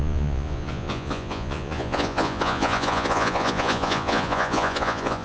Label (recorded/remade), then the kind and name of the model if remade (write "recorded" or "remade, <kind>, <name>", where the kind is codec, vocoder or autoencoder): remade, vocoder, Vocos